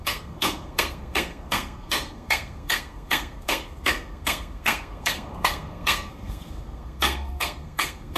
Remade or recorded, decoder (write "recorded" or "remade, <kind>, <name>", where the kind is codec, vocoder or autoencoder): remade, codec, SNAC